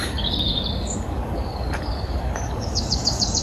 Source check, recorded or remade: remade